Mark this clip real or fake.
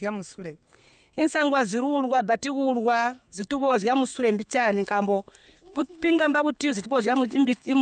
fake